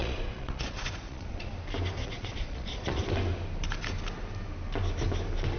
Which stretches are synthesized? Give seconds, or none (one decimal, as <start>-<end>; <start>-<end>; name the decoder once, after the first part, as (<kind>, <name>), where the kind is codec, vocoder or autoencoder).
0.0-1.5 (vocoder, Vocos); 2.0-3.0